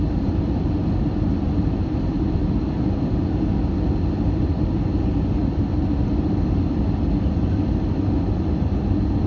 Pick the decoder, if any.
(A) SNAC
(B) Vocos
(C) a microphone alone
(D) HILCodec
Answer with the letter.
C